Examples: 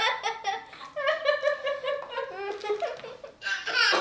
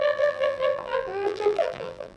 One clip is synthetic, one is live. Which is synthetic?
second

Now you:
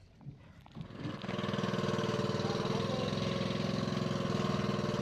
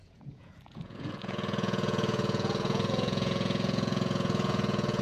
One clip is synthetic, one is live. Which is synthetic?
second